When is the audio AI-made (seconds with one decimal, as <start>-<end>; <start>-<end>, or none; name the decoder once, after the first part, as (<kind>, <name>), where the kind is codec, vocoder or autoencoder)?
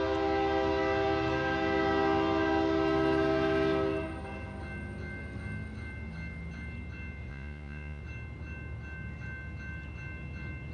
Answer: 7.3-8.0 (vocoder, Vocos)